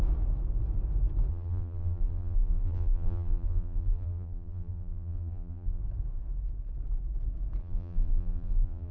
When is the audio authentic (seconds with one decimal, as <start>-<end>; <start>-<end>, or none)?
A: 0.0-1.3; 5.8-7.6

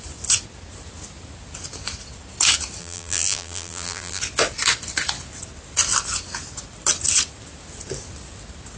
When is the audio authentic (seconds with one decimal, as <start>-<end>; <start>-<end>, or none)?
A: 0.0-2.8; 4.2-8.8

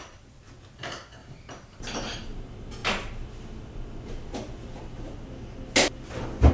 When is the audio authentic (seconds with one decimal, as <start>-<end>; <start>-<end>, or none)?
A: 0.0-1.2; 2.4-6.5